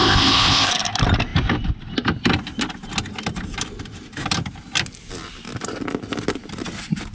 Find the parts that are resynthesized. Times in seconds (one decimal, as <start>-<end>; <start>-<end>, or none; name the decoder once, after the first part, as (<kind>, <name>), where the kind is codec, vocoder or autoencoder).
0.0-0.7 (codec, ZipCodec)